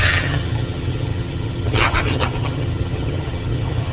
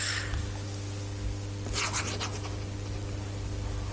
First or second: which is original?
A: second